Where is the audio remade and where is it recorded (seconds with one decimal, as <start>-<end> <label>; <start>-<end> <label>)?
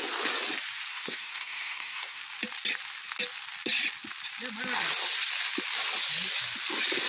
0.0-0.9 recorded; 0.9-2.2 remade; 2.2-7.1 recorded